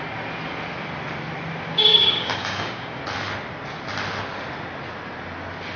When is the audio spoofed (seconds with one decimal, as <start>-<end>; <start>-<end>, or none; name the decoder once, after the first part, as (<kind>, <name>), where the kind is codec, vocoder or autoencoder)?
1.9-3.0 (codec, DAC)